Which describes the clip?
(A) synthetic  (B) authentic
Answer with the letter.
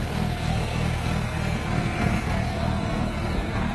A